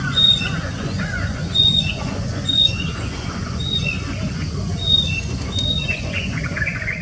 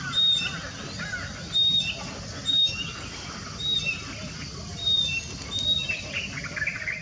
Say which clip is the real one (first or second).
second